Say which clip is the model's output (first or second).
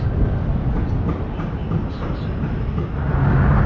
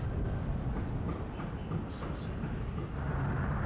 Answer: second